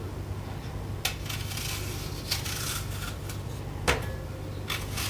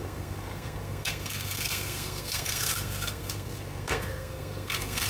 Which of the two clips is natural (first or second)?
first